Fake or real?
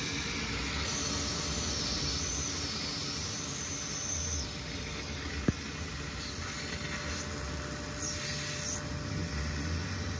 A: real